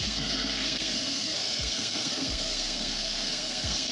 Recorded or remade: remade